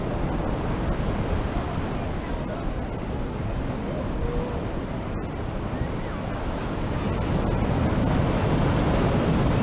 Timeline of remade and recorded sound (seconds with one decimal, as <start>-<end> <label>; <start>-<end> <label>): 0.0-9.6 recorded